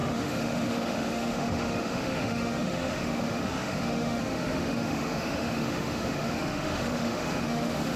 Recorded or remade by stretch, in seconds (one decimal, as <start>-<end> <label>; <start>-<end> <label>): 0.0-8.0 remade